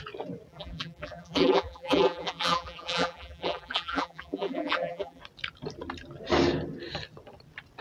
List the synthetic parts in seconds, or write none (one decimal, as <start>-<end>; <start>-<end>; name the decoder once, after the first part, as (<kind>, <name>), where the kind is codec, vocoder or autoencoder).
0.5-5.2 (vocoder, BigVGAN v2)